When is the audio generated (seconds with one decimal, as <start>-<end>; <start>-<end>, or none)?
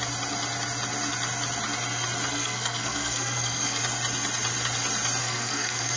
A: 2.3-3.8; 5.2-6.0